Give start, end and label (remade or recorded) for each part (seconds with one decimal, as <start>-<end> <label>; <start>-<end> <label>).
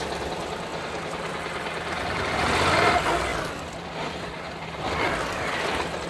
0.0-6.1 recorded